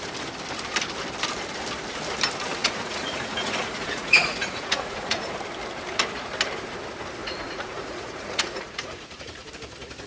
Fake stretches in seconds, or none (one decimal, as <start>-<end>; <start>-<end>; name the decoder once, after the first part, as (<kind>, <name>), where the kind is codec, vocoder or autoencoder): 2.6-5.3 (vocoder, Vocos); 7.2-9.5